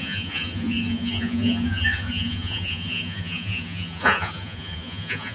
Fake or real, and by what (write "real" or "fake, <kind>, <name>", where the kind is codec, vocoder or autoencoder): fake, vocoder, Vocos